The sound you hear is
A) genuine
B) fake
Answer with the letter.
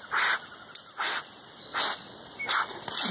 A